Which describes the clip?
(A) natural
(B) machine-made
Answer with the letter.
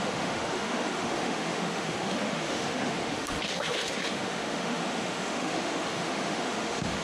B